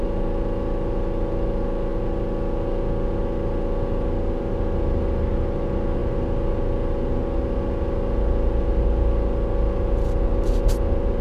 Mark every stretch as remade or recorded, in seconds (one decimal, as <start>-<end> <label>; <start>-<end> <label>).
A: 0.0-11.2 recorded